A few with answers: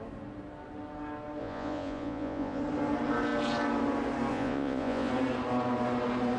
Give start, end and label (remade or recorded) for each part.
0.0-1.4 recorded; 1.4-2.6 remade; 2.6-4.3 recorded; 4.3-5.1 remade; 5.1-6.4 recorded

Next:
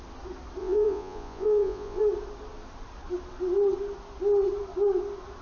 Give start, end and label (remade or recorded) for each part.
0.0-0.6 recorded; 0.6-2.0 remade; 2.0-5.4 recorded